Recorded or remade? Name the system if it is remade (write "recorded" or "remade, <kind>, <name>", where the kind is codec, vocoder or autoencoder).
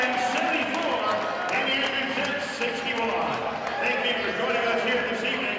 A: recorded